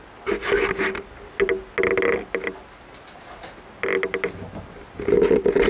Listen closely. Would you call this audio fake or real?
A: real